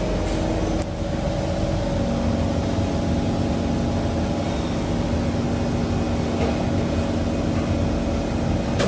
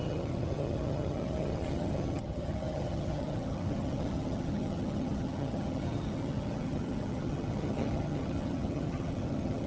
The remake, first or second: second